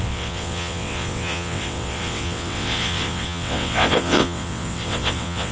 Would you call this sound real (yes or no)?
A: no